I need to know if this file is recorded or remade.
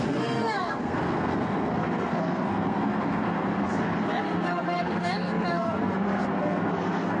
remade